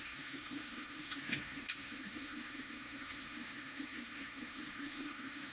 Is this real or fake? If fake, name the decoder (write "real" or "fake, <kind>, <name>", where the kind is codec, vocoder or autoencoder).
fake, codec, SNAC